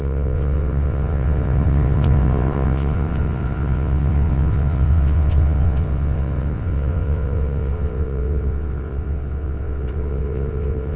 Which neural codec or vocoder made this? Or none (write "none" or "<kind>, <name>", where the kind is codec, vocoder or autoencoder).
vocoder, WaveNeXt